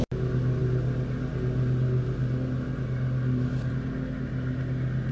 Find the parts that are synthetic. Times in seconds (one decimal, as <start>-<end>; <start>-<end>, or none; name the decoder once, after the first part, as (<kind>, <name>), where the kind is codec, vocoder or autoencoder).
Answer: none